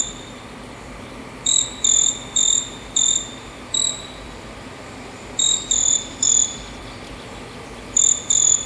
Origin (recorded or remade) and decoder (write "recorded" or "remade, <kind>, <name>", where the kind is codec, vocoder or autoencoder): remade, vocoder, BigVGAN v2